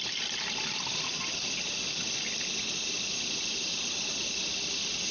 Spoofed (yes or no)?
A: no